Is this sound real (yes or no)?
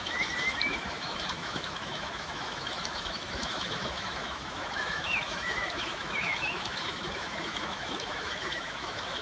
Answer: no